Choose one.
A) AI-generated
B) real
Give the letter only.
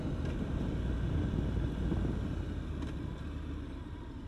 B